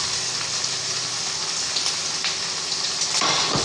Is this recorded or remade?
remade